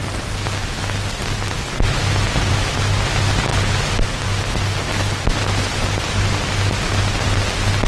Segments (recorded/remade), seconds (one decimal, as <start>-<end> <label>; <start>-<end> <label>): 0.0-7.9 recorded